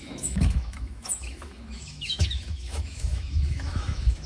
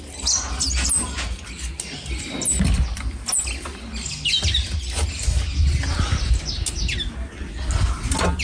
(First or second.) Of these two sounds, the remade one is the first